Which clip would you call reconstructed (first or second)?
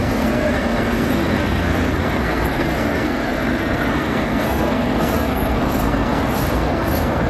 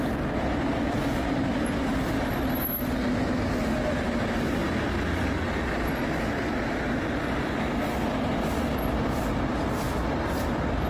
first